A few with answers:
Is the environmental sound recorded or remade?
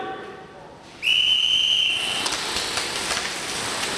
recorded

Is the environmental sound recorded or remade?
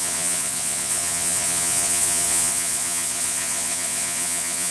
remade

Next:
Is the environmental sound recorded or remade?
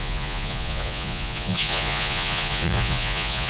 remade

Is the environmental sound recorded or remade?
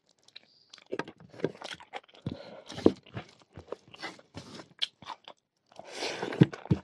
recorded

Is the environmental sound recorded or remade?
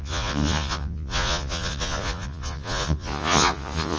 remade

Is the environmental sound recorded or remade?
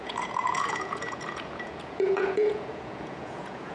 remade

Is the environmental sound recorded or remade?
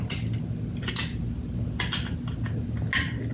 recorded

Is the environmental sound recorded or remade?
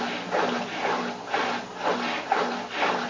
recorded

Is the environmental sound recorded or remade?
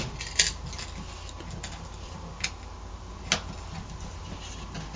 recorded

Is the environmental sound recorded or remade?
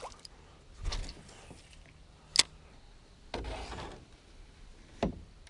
recorded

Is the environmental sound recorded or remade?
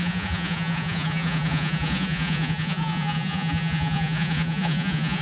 remade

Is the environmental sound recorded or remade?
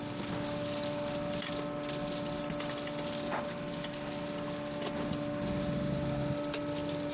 recorded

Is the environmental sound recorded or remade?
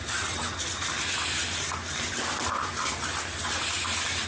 recorded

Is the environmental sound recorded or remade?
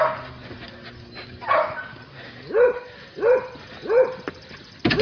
recorded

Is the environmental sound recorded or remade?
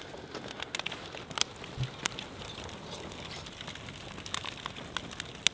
recorded